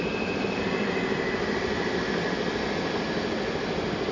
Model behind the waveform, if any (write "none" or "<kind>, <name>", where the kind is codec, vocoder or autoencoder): none